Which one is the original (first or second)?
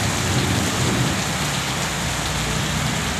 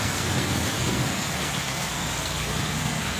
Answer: first